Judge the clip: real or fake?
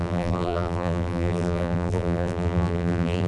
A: fake